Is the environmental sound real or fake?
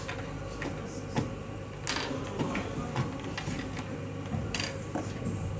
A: real